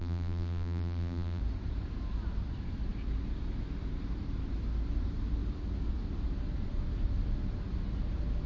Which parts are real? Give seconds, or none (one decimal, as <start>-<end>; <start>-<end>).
1.4-8.5